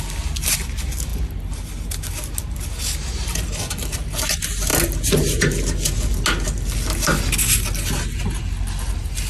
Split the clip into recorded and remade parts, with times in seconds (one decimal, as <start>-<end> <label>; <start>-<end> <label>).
0.0-9.3 recorded

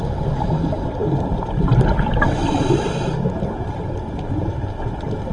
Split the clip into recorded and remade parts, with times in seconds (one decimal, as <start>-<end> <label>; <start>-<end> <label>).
0.0-5.3 remade

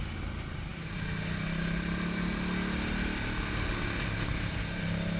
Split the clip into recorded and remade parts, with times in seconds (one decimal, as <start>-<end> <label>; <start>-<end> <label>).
0.0-5.2 recorded

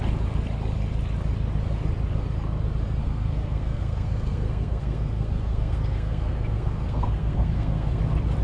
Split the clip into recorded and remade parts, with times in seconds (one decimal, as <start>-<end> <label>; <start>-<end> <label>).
0.0-3.0 recorded; 3.0-8.0 remade; 8.0-8.4 recorded

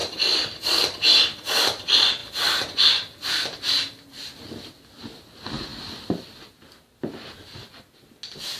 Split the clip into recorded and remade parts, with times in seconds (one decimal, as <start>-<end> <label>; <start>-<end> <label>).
0.0-0.8 remade; 0.8-5.7 recorded; 5.7-6.4 remade; 6.4-8.6 recorded

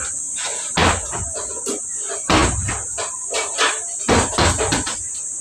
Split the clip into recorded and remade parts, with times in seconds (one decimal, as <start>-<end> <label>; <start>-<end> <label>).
0.0-5.4 recorded